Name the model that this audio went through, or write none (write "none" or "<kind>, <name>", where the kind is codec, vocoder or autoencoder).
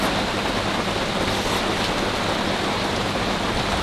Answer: none